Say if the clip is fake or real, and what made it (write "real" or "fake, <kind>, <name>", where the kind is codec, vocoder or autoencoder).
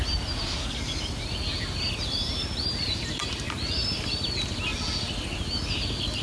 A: real